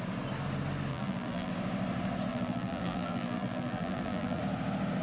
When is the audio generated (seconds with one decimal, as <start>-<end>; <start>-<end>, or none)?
0.9-1.5; 2.3-4.4